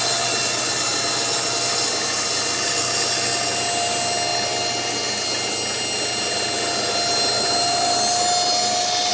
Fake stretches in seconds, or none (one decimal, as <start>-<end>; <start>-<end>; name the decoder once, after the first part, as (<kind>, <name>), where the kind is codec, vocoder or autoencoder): none